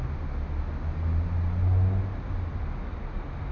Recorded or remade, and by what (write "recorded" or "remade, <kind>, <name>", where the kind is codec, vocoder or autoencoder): recorded